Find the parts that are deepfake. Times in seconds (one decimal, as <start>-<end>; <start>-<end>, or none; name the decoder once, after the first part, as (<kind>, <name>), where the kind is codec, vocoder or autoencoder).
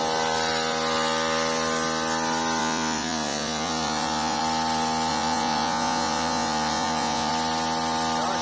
2.6-4.4 (vocoder, Vocos); 5.1-7.3